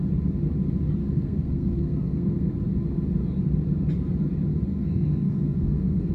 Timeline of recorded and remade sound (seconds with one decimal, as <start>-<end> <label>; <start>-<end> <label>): 0.0-1.0 recorded; 1.0-2.5 remade; 2.5-4.7 recorded; 4.7-6.1 remade